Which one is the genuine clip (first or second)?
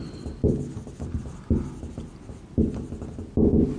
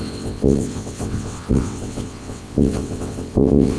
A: first